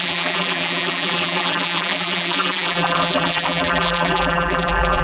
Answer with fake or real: fake